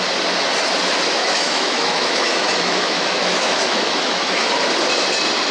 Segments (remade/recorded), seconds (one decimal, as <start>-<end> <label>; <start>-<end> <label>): 0.0-1.2 recorded; 1.2-4.5 remade; 4.5-5.5 recorded